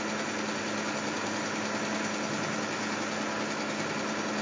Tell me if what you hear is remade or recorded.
recorded